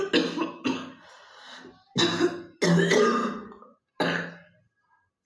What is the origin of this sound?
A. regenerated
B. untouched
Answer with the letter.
B